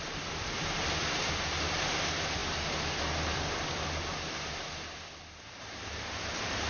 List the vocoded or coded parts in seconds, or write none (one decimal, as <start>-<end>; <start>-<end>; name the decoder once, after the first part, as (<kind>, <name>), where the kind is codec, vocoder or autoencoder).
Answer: 0.0-6.7 (vocoder, BigVGAN v2)